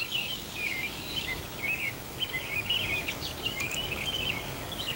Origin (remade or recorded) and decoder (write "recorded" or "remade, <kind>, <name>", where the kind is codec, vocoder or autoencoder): remade, codec, DAC